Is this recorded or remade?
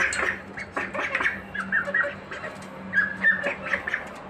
recorded